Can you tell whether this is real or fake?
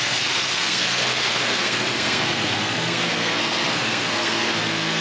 fake